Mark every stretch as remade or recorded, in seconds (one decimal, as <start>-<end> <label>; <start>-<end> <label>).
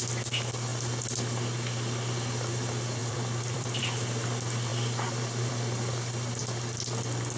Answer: 0.0-3.0 recorded; 3.0-3.8 remade; 3.8-7.4 recorded